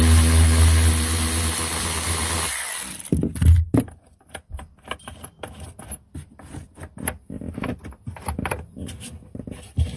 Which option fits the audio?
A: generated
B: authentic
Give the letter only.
B